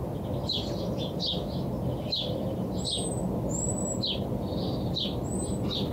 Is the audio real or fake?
real